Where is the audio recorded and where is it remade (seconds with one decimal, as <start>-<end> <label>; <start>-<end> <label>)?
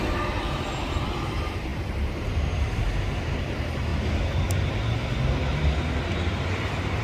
0.0-3.9 remade; 3.9-6.1 recorded; 6.1-7.0 remade